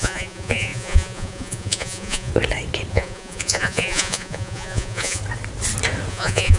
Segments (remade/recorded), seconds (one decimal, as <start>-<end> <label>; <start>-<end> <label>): 0.0-2.3 remade; 2.3-2.9 recorded; 2.9-5.2 remade; 5.2-6.1 recorded; 6.1-6.6 remade